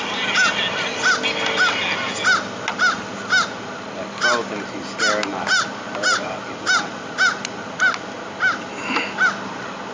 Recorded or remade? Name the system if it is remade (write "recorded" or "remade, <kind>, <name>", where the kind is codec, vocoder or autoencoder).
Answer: recorded